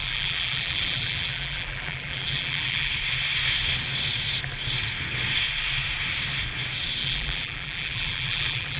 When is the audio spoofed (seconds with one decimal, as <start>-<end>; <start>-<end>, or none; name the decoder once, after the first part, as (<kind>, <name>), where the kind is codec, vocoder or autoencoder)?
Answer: 0.0-2.9 (vocoder, BigVGAN v2); 7.0-8.8